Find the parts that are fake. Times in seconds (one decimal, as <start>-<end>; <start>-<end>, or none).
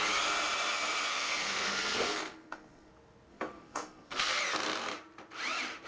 1.1-2.9; 3.3-4.4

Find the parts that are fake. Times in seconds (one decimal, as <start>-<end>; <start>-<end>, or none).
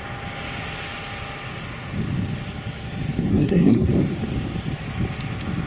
3.3-3.9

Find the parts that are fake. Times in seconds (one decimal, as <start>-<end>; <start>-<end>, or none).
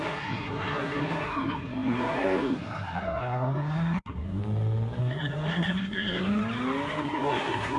0.0-4.4; 5.0-6.4; 7.0-7.8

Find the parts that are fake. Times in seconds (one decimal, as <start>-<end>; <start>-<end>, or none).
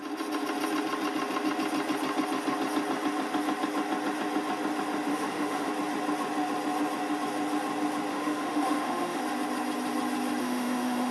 5.1-5.7; 8.1-9.2; 10.4-11.1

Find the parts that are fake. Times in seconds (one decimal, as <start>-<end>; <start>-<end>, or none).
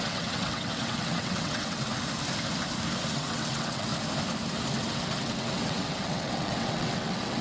0.0-1.9; 3.1-3.9; 4.7-7.4